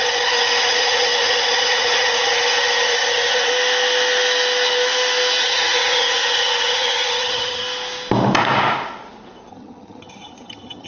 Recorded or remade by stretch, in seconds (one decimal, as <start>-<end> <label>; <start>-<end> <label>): 0.0-3.5 remade; 3.5-5.4 recorded; 5.4-7.6 remade; 7.6-9.5 recorded; 9.5-10.9 remade